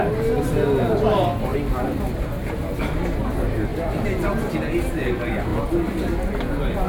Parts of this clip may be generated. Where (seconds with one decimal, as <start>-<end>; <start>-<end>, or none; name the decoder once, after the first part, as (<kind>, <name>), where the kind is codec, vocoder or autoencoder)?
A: 3.7-4.5 (vocoder, BigVGAN v2)